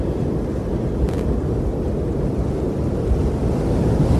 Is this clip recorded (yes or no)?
yes